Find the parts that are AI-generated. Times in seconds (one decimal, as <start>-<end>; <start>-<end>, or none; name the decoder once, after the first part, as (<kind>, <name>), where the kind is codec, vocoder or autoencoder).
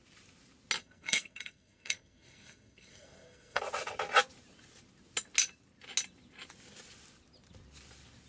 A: 0.8-3.6 (codec, SNAC)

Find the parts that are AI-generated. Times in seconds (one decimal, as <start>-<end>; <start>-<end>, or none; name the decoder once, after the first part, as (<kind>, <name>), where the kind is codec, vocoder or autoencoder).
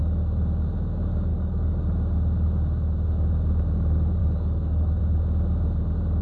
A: 1.3-1.8 (codec, DAC); 4.2-5.0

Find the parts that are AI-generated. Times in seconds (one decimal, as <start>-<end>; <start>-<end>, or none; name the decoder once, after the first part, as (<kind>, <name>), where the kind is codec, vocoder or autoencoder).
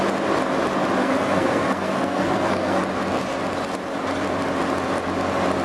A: 1.0-2.8 (codec, SNAC)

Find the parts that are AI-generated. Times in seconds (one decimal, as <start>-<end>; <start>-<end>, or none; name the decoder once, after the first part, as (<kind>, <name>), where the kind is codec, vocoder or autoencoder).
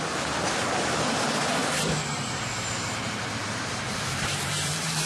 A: 1.6-5.1 (vocoder, BigVGAN v2)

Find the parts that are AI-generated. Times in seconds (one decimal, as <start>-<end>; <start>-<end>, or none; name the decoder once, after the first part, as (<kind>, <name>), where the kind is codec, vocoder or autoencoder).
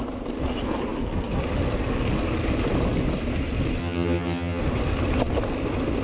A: 3.8-4.6 (vocoder, HiFi-GAN)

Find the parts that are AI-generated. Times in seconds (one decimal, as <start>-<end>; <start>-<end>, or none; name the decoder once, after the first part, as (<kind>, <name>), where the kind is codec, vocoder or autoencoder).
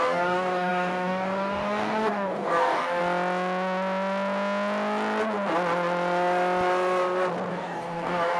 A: 0.0-3.0 (codec, DAC); 7.5-8.4